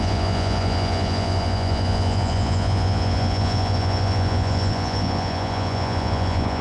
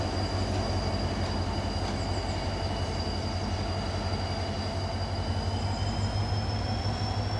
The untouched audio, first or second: second